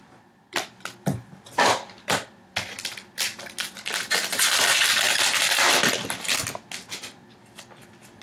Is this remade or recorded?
recorded